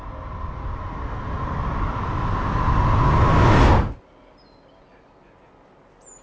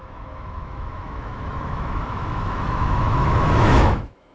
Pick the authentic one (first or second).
first